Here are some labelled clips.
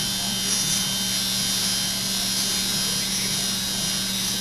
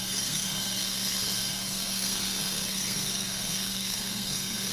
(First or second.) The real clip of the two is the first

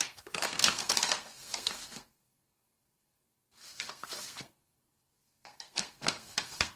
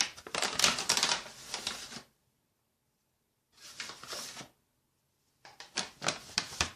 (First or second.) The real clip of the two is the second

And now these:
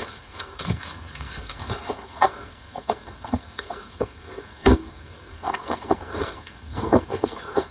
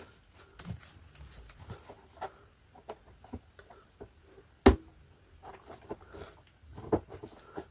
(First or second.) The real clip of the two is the second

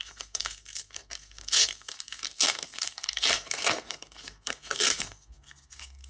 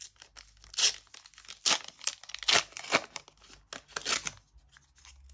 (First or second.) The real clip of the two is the second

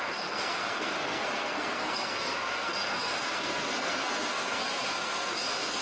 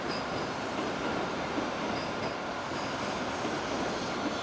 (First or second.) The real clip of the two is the second